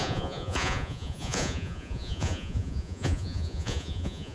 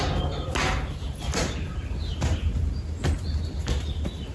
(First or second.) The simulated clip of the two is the first